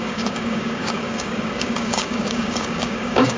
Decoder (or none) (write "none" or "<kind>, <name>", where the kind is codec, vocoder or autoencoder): codec, DAC